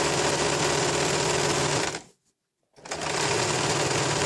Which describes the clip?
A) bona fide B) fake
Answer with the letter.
A